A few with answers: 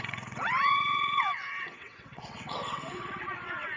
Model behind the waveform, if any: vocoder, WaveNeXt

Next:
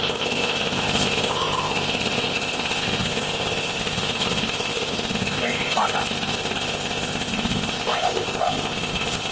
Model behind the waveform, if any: codec, ZipCodec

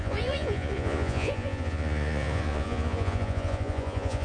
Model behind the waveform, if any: vocoder, Vocos